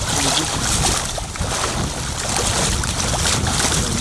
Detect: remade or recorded recorded